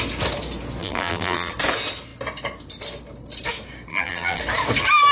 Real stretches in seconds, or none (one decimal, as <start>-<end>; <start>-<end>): 0.0-0.8; 1.5-3.9; 4.4-5.1